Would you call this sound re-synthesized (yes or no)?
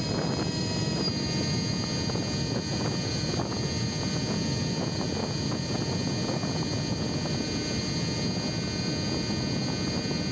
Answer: no